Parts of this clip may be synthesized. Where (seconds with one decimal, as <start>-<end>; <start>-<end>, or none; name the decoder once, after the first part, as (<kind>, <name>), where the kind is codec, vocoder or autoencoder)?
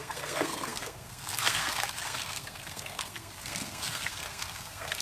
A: 0.0-5.0 (codec, SNAC)